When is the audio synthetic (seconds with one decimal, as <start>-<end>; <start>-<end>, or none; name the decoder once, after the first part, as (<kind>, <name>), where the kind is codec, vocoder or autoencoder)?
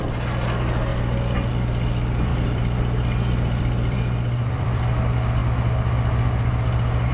2.3-4.8 (vocoder, BigVGAN v2)